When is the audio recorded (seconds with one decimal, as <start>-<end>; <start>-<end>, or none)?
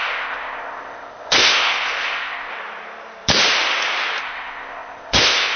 2.5-4.2